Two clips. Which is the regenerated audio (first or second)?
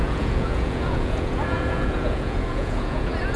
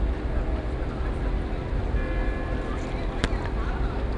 first